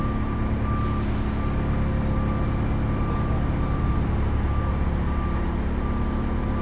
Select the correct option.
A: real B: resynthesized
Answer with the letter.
A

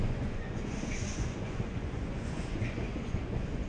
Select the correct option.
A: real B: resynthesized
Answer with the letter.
B